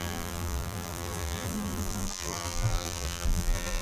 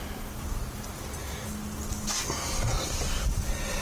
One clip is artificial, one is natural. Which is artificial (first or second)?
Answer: first